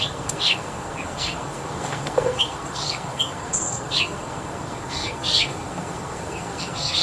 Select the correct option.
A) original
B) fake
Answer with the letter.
B